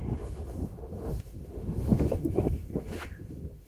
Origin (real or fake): fake